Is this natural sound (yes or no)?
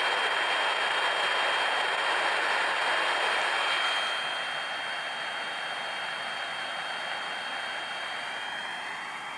yes